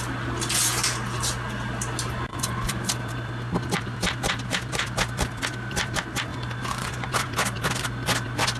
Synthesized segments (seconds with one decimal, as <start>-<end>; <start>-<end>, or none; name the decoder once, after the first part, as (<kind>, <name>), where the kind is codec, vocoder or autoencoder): 2.3-2.9 (vocoder, Vocos); 6.3-7.3